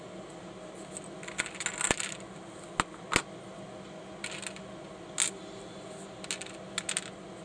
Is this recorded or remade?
recorded